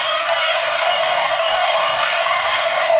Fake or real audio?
fake